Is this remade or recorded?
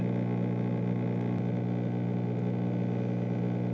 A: recorded